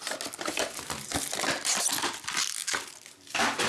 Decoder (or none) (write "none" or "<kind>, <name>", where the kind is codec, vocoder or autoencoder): none